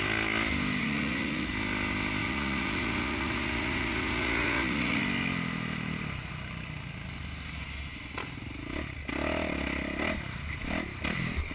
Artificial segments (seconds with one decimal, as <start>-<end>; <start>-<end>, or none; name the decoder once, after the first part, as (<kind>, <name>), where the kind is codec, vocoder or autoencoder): 0.8-1.5 (vocoder, Vocos); 2.2-5.0